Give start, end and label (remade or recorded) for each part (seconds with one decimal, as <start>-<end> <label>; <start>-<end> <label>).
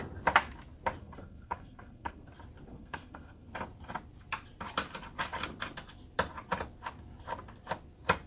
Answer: 0.0-1.0 recorded; 1.0-2.3 remade; 2.3-2.7 recorded; 2.7-3.5 remade; 3.5-8.3 recorded